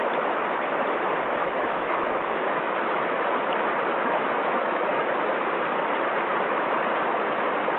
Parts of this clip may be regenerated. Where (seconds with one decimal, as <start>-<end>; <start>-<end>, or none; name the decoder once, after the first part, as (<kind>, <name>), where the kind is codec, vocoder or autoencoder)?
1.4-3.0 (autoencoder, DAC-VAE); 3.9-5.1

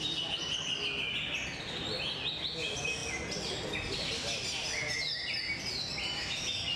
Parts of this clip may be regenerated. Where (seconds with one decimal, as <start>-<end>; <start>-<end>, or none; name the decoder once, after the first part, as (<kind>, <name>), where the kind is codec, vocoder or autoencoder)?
none

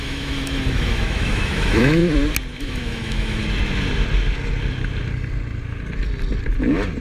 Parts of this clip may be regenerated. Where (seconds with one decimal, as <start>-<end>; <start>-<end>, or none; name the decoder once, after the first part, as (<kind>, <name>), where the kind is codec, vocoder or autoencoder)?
0.0-2.0 (autoencoder, DAC-VAE); 2.6-3.4

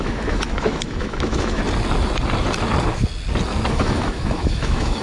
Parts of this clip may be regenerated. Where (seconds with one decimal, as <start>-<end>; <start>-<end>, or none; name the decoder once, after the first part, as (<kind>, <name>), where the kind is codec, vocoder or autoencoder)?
0.0-1.6 (autoencoder, DAC-VAE); 3.7-5.0

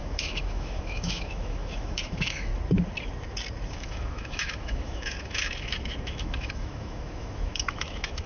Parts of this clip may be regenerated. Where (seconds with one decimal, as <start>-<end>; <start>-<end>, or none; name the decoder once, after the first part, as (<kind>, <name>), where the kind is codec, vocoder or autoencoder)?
0.0-2.5 (autoencoder, DAC-VAE); 3.7-8.3